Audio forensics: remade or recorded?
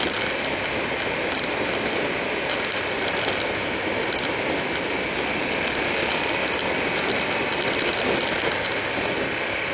recorded